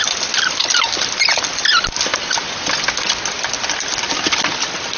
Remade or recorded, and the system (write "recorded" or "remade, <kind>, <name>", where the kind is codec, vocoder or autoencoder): recorded